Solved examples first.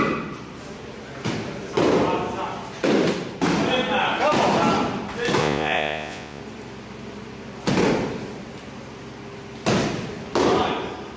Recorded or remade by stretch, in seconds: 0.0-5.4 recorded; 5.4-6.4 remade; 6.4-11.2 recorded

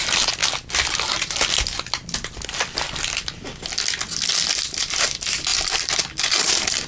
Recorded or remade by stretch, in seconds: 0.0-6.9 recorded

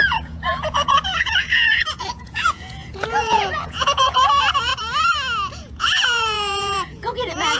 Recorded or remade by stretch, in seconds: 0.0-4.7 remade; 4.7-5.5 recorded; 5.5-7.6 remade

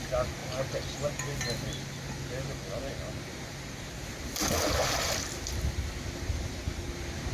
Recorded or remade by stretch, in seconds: 0.0-7.3 recorded